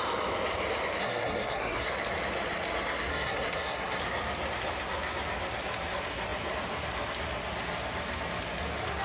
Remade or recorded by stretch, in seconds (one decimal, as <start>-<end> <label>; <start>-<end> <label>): 0.0-1.0 recorded; 1.0-1.9 remade; 1.9-3.1 recorded; 3.1-4.0 remade; 4.0-9.0 recorded